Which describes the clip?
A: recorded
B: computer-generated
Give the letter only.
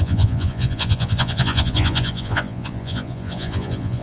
B